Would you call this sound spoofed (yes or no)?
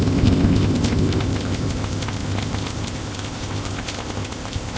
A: yes